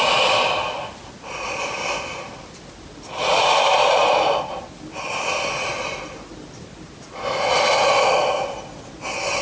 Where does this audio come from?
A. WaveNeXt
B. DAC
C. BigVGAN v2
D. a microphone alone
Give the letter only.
D